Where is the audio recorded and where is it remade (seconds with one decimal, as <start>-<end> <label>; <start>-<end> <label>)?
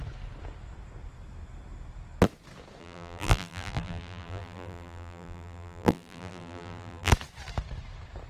0.0-2.8 recorded; 2.8-7.1 remade; 7.1-8.3 recorded